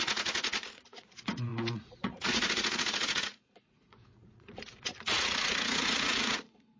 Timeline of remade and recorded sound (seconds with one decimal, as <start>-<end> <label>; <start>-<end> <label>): 0.0-6.8 remade